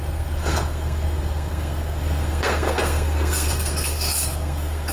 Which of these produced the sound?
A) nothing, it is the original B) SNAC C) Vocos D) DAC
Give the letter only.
B